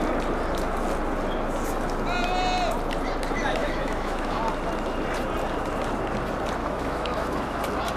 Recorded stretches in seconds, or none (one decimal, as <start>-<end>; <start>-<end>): 0.0-3.6; 4.4-6.6; 7.6-8.0